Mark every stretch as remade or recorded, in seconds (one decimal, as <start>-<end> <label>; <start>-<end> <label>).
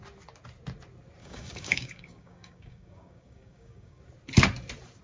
0.0-1.2 recorded; 1.2-4.0 remade; 4.0-5.0 recorded